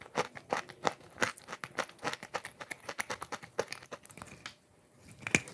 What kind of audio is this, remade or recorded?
recorded